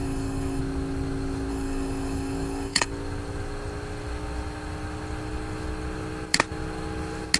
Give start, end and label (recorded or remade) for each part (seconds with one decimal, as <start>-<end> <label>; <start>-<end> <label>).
0.0-0.6 remade; 0.6-1.5 recorded; 1.5-2.9 remade; 2.9-7.4 recorded